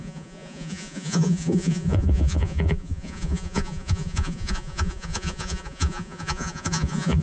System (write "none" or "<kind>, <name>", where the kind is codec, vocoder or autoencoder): vocoder, Vocos